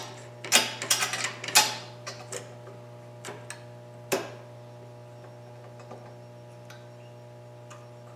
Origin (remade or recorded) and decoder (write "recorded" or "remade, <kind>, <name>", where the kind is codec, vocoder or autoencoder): recorded